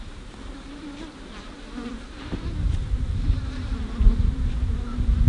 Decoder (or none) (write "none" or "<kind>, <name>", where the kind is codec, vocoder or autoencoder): vocoder, BigVGAN v2